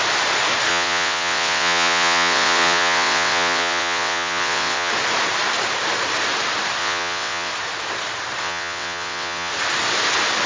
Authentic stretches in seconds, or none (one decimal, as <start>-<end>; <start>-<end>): 0.0-0.7; 4.9-6.8; 7.5-8.4; 9.5-10.5